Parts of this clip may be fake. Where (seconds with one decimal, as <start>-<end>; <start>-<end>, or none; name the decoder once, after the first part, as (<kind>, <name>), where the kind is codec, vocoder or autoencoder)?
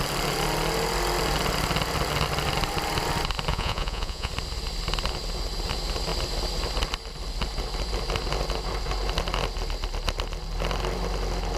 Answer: 3.5-4.3 (vocoder, Vocos)